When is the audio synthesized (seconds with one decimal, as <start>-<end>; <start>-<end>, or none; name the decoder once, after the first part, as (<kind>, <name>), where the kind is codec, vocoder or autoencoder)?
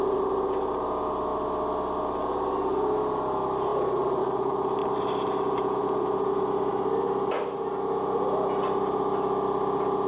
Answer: 3.7-4.2 (vocoder, BigVGAN v2)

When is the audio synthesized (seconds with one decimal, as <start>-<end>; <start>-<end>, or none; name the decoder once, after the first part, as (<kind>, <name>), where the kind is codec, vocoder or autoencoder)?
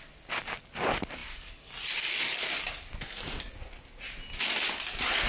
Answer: none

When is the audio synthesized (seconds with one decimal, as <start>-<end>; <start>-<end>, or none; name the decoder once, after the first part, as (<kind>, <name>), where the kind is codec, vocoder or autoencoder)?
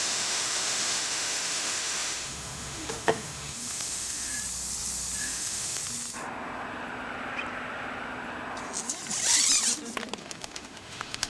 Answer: 0.0-4.3 (autoencoder, DAC-VAE); 5.2-5.8; 10.2-11.3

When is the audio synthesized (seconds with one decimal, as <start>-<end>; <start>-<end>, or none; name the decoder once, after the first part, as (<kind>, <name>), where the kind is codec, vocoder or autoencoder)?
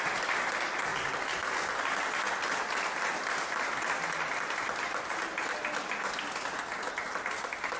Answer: none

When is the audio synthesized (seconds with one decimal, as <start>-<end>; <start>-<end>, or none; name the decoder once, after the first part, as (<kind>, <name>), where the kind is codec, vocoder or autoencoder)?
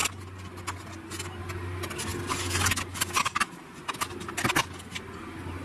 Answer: none